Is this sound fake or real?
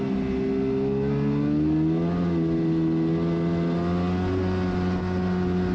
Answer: real